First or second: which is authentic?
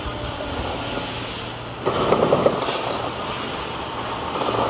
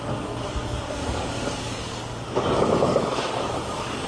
first